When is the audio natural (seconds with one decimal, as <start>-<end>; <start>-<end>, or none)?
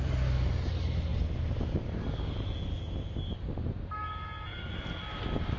0.0-5.6